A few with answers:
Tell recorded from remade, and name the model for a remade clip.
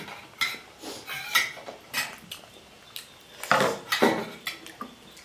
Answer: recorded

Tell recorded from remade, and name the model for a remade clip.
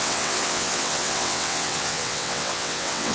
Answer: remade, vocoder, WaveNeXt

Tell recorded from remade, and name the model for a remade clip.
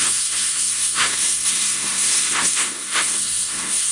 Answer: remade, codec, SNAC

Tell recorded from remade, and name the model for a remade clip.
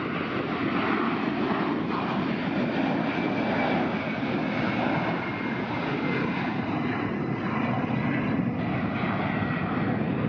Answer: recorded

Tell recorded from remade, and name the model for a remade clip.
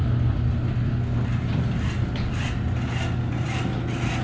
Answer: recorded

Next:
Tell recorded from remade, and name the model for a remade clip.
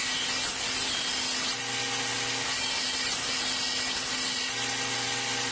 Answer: recorded